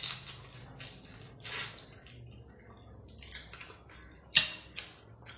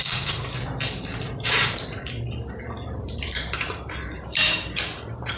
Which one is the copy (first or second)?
second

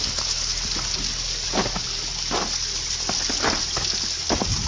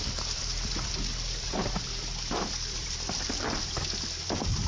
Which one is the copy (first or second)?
second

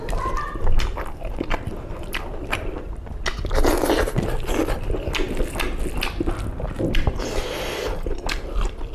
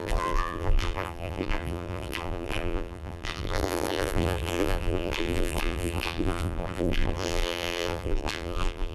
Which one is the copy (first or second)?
second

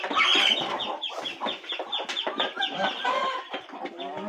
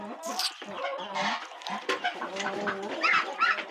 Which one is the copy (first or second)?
second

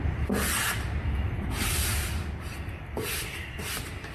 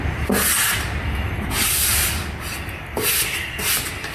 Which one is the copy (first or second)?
first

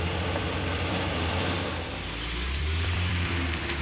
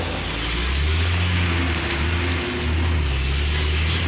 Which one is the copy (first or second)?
first